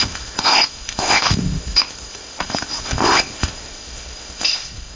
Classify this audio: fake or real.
fake